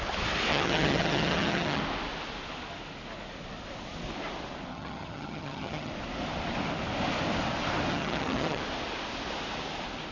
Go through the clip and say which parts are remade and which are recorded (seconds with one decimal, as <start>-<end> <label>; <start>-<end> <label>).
0.0-0.5 recorded; 0.5-1.8 remade; 1.8-4.7 recorded; 4.7-5.9 remade; 5.9-7.9 recorded; 7.9-8.6 remade; 8.6-10.1 recorded